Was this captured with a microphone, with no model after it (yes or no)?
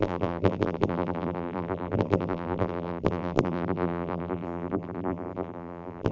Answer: no